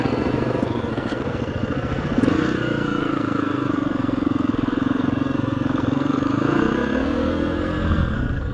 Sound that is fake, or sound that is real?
fake